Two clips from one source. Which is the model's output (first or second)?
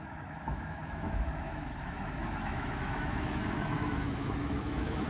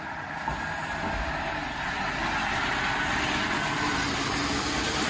first